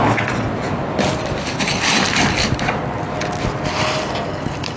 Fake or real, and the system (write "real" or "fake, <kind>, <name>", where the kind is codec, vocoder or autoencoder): real